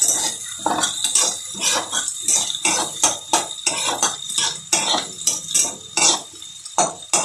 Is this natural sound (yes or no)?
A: yes